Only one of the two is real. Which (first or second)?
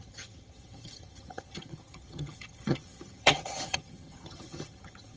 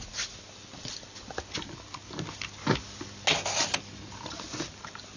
second